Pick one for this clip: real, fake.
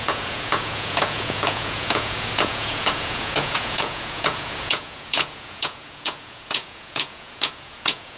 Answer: fake